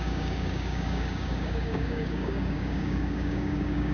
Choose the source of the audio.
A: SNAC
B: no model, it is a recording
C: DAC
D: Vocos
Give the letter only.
C